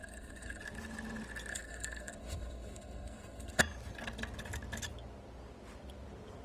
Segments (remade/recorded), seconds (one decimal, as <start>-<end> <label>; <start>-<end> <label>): 0.0-0.6 remade; 0.6-1.5 recorded; 1.5-3.6 remade; 3.6-6.4 recorded